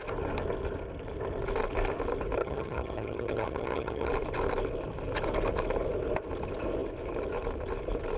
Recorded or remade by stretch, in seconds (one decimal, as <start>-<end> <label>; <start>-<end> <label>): 0.0-2.4 recorded; 2.4-4.1 remade; 4.1-8.2 recorded